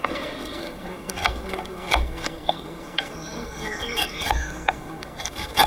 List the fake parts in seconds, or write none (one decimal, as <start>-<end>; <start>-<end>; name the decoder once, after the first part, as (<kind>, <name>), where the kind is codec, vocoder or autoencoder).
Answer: 0.0-5.7 (codec, SNAC)